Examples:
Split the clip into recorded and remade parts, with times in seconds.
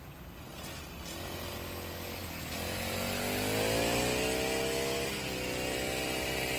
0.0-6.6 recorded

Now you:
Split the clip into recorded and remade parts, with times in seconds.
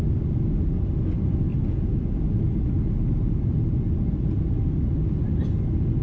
0.0-6.0 recorded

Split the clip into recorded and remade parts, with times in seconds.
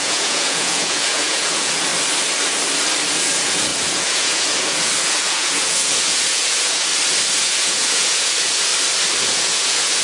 0.0-1.9 remade; 1.9-3.1 recorded; 3.1-6.9 remade; 6.9-7.4 recorded; 7.4-8.7 remade; 8.7-9.2 recorded; 9.2-10.0 remade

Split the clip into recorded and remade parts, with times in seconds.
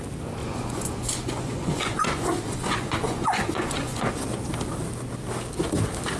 0.0-0.4 recorded; 0.4-4.1 remade; 4.1-6.2 recorded